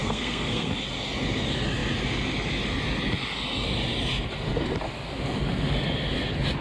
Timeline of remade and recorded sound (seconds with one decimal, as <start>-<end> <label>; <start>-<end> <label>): 0.0-0.7 remade; 0.7-6.6 recorded